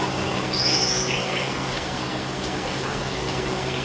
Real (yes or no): no